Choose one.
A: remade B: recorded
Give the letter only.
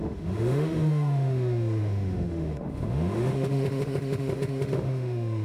A